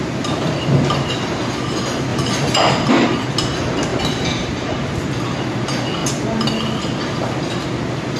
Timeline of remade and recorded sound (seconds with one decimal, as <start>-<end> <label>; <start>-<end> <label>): 0.0-2.1 recorded; 2.1-2.9 remade; 2.9-3.9 recorded; 3.9-5.0 remade; 5.0-8.2 recorded